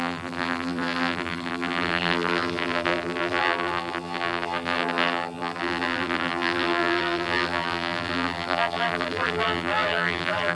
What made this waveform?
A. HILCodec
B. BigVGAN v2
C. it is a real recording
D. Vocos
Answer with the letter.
B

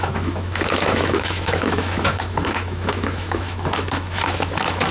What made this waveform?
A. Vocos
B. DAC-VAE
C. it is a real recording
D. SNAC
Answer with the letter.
B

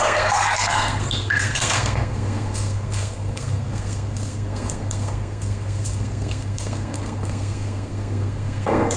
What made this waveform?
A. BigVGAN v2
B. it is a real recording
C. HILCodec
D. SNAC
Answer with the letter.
D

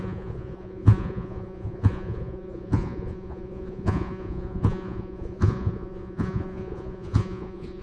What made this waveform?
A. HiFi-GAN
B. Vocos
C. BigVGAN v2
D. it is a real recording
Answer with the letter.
B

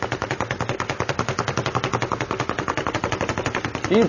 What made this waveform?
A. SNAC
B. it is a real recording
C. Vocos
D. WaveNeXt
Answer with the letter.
B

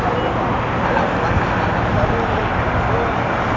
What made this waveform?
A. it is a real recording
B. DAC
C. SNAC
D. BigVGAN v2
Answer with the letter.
A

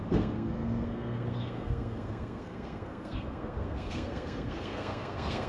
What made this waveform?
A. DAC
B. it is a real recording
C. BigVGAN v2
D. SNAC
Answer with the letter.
D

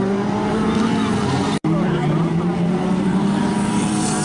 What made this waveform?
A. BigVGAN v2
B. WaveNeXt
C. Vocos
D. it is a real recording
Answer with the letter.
A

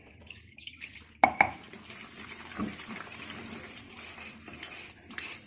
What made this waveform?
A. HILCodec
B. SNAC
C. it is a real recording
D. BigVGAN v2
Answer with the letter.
D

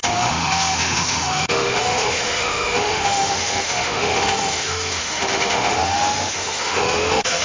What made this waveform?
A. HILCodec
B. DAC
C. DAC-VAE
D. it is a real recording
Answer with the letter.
C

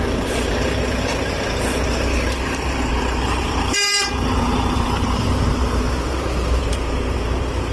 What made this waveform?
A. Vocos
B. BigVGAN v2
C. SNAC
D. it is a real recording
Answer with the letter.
B